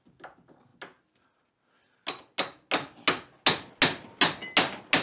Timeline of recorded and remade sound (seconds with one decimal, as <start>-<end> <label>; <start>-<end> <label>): 0.0-5.0 recorded